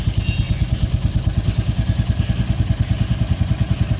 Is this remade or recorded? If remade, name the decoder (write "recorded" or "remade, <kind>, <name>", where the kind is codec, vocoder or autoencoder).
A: recorded